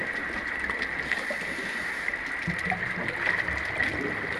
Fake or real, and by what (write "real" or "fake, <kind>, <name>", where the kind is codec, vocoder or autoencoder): real